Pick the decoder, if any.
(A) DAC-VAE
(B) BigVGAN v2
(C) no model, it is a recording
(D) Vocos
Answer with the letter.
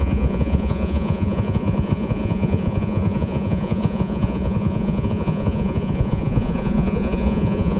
D